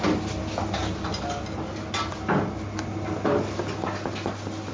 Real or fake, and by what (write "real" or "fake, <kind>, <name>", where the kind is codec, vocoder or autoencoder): real